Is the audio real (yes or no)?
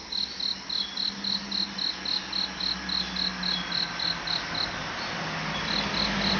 yes